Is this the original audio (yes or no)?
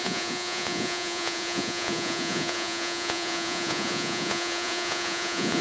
no